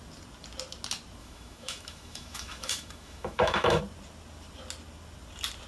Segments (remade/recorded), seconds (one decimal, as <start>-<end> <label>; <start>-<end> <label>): 0.0-1.2 recorded; 1.2-3.8 remade; 3.8-5.7 recorded